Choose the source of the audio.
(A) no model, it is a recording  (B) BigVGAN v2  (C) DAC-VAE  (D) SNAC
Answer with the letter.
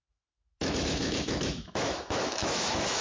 C